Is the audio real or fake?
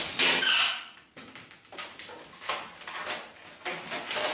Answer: real